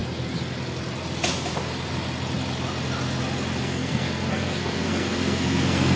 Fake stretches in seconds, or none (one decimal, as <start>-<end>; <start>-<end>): 3.6-6.0